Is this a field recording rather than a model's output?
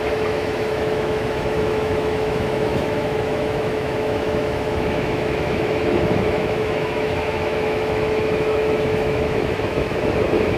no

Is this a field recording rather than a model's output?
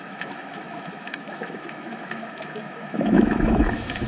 no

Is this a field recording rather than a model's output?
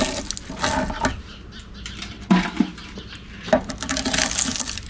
yes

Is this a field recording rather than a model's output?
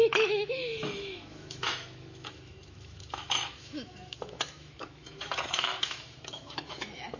no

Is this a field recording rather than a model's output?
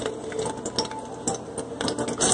yes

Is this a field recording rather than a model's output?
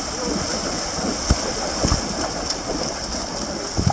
yes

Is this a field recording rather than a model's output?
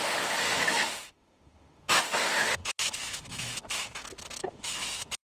no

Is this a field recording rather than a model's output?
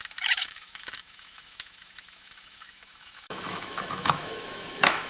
no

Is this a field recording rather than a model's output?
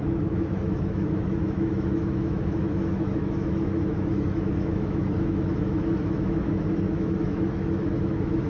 no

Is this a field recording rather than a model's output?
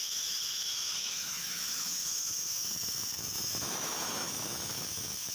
no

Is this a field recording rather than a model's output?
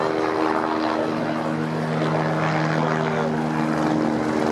yes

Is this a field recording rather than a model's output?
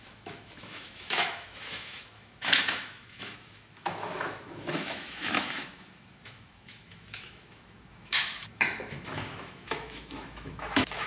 no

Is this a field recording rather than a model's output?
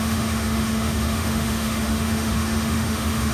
no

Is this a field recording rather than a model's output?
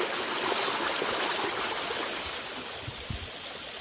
yes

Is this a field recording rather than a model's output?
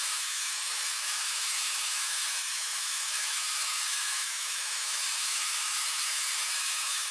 no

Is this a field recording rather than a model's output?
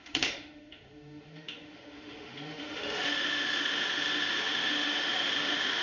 no